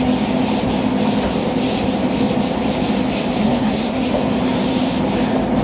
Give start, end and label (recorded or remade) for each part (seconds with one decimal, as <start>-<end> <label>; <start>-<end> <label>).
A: 0.0-3.4 recorded; 3.4-4.1 remade; 4.1-5.6 recorded